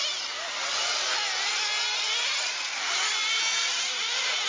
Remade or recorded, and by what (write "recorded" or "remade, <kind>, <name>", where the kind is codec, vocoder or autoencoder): recorded